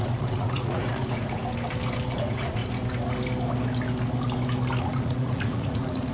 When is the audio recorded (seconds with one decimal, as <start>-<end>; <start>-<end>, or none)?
1.4-2.2; 2.6-4.8